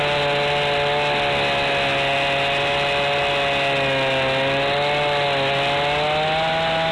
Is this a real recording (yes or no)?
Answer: yes